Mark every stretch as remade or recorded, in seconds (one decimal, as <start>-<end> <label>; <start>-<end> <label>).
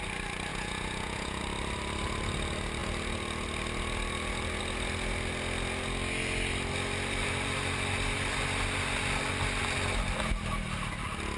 0.0-0.5 recorded; 0.5-1.4 remade; 1.4-11.4 recorded